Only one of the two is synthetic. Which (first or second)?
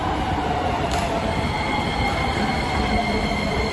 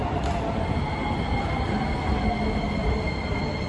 first